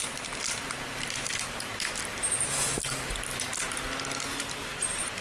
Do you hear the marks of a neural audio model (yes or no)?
no